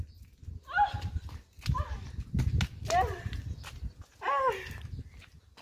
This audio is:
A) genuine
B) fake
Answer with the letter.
A